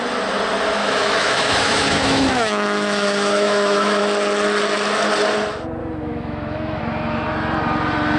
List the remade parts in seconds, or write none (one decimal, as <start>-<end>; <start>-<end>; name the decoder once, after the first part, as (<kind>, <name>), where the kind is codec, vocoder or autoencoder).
0.8-4.0 (autoencoder, DAC-VAE); 5.8-6.8